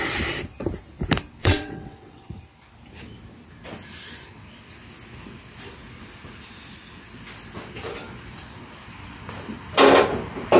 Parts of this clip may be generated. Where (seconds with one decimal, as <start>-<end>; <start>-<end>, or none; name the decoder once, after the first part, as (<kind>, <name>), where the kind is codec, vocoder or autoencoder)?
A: 1.4-2.4 (vocoder, WaveNeXt)